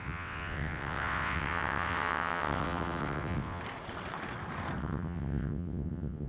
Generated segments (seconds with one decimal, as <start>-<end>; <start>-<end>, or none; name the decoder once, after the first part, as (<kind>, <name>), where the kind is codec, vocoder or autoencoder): 0.0-3.6 (vocoder, WaveNeXt); 4.8-6.3